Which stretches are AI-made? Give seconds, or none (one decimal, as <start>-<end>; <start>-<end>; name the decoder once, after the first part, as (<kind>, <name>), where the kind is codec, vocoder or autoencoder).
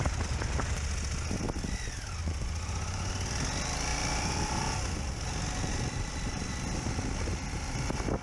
2.2-3.1 (vocoder, Vocos)